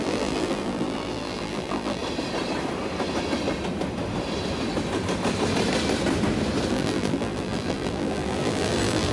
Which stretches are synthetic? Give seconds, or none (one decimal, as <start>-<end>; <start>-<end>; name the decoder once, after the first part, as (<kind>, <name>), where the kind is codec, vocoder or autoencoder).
0.0-2.0 (vocoder, BigVGAN v2); 6.7-9.1